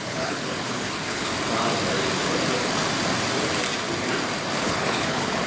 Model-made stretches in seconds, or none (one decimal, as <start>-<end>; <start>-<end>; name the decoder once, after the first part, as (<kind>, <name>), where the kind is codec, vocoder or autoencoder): 0.0-1.3 (codec, HILCodec); 4.6-5.5